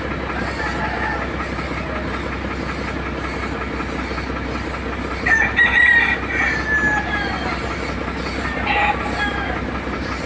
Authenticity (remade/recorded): recorded